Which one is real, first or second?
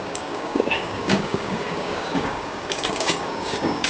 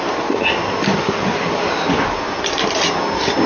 second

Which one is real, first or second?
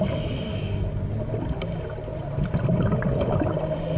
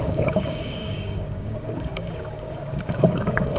first